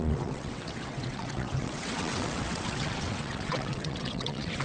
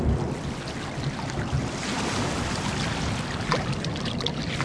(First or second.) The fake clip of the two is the first